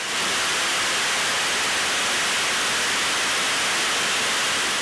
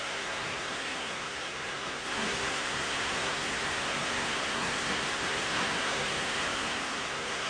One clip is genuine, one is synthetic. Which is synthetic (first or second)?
second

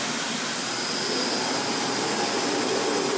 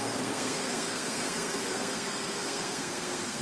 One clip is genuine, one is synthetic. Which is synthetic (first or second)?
second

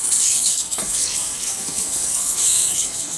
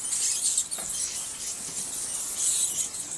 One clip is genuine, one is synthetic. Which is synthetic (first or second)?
first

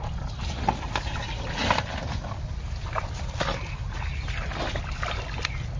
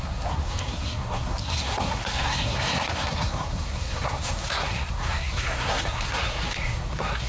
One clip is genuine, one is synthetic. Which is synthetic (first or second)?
second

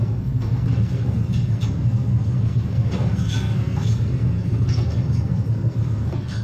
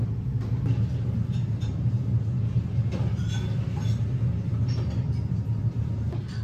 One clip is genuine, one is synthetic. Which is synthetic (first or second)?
first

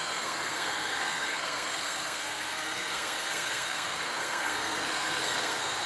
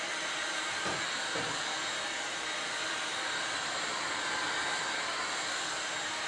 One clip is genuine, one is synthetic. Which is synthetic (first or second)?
first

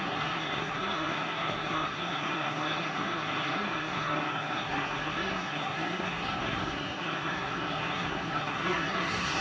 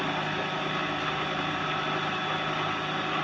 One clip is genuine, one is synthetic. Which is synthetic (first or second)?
first